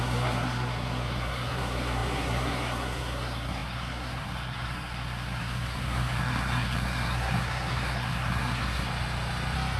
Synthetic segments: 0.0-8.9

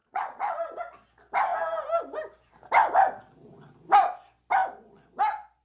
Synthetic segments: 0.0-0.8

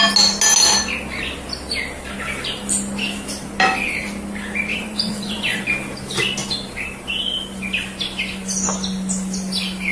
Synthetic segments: 4.7-5.6

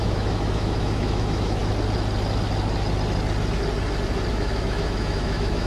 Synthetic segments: 0.0-1.6; 4.3-5.7